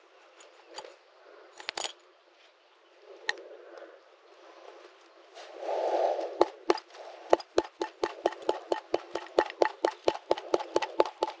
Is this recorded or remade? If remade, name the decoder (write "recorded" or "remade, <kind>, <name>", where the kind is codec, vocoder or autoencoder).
recorded